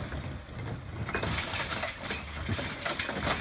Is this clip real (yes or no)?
yes